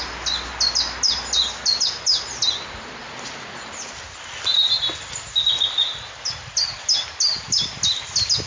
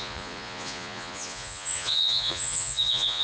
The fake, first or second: second